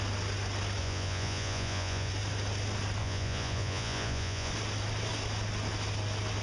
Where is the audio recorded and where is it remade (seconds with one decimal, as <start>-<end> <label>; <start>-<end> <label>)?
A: 0.0-0.8 recorded; 0.8-2.1 remade; 2.1-3.0 recorded; 3.0-4.5 remade; 4.5-6.4 recorded